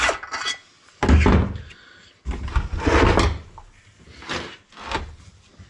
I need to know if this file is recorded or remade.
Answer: recorded